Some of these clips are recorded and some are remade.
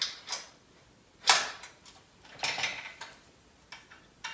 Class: recorded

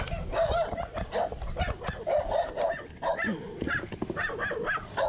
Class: recorded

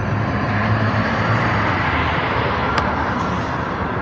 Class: remade